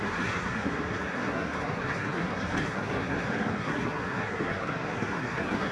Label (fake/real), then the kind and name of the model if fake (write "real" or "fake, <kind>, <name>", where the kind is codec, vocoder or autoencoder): fake, codec, SNAC